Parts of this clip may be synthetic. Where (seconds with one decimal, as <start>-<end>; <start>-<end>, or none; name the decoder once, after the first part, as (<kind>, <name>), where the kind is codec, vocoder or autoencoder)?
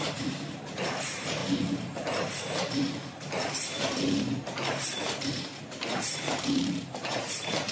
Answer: 0.0-1.4 (vocoder, BigVGAN v2); 6.0-7.7